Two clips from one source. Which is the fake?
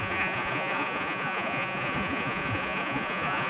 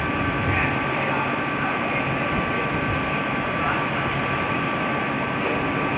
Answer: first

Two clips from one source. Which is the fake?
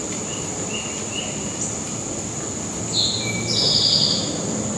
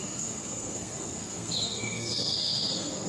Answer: second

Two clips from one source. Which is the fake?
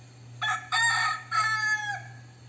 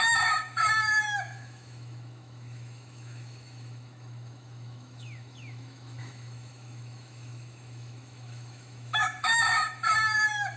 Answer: second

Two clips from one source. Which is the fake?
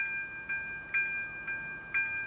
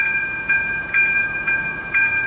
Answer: second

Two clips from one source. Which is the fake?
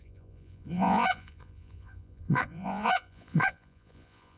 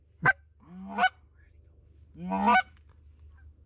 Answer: first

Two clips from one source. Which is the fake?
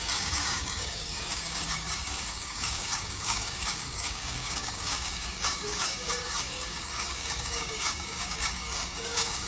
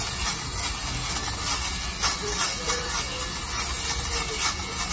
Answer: first